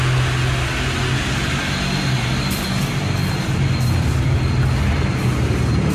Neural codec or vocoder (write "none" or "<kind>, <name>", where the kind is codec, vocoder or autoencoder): none